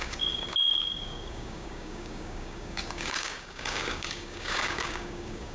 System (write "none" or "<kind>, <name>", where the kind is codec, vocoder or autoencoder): codec, DAC